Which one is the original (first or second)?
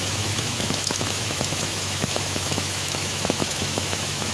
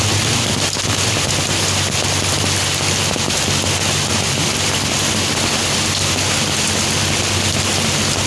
second